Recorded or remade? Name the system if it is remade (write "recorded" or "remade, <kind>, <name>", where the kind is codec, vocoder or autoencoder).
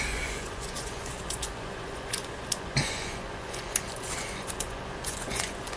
remade, vocoder, Vocos